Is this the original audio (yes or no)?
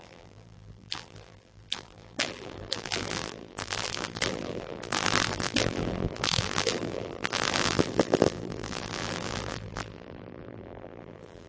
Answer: no